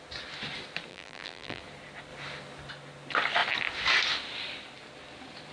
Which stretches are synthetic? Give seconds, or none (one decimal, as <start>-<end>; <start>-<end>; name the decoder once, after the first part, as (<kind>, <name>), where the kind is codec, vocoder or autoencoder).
0.9-1.6 (vocoder, BigVGAN v2)